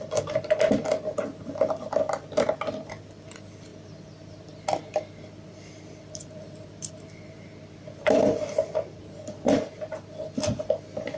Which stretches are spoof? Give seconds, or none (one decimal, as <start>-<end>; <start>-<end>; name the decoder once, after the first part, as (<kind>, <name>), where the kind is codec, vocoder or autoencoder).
none